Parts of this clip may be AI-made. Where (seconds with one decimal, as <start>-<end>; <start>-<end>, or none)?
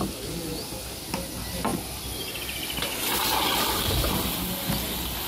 none